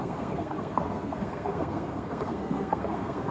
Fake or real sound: fake